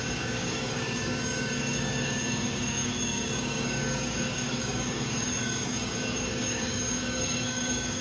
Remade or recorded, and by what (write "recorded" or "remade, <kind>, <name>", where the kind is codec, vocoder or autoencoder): remade, codec, DAC